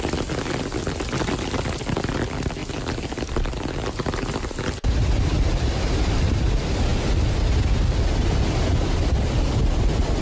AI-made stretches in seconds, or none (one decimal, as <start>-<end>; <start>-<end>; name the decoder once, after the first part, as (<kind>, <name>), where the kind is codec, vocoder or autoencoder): none

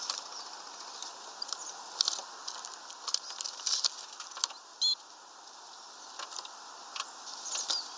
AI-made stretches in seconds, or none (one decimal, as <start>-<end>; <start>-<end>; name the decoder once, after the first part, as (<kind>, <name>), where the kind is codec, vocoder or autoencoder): none

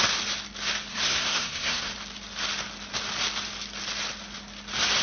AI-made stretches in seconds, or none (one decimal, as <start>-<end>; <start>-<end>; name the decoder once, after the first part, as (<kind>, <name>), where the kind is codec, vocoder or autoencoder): 0.9-1.9 (codec, SNAC)

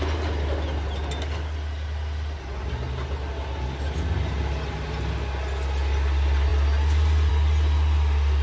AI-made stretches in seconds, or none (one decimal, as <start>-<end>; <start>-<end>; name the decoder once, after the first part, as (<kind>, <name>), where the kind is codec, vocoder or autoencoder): none

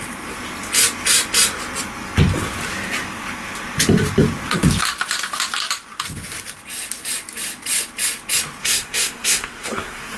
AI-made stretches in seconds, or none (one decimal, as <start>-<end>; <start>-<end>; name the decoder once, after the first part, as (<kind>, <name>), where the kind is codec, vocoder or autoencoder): 8.6-10.2 (codec, SNAC)

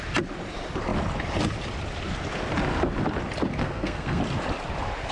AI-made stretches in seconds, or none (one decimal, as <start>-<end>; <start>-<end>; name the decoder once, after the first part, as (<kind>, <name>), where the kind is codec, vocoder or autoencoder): 3.6-4.2 (codec, SNAC)

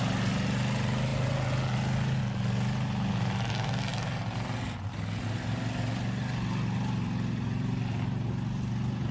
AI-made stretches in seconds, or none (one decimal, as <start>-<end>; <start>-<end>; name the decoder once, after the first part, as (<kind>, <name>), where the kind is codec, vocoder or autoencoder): none